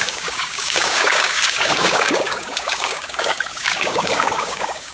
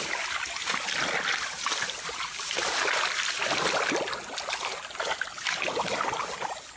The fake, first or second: first